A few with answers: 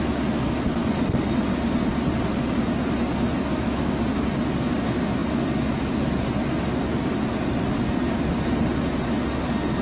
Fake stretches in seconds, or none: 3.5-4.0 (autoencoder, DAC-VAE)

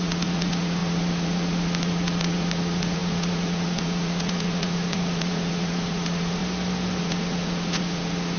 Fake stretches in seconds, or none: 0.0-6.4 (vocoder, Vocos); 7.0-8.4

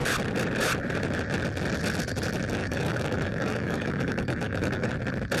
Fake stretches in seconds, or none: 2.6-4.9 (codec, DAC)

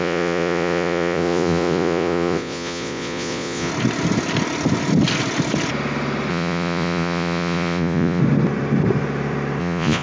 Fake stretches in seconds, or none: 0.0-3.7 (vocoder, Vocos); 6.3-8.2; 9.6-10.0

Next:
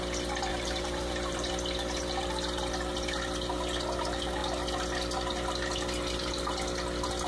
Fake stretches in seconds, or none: 0.5-1.5 (vocoder, BigVGAN v2)